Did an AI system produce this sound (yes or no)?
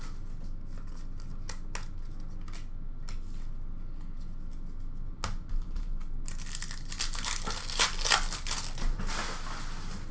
no